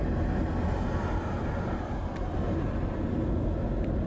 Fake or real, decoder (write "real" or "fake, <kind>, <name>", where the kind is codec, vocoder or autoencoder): real